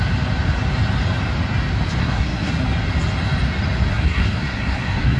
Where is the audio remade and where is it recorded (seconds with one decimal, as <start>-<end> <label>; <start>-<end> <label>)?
0.0-2.0 recorded; 2.0-2.5 remade; 2.5-3.9 recorded; 3.9-5.2 remade